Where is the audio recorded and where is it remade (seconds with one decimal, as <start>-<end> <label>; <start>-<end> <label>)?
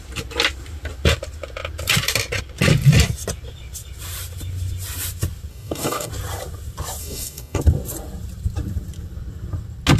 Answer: 0.0-5.5 recorded; 5.5-6.1 remade; 6.1-7.0 recorded; 7.0-7.6 remade; 7.6-10.0 recorded